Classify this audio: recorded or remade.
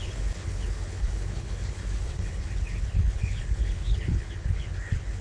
remade